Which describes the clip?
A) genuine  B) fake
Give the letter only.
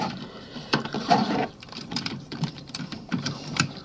B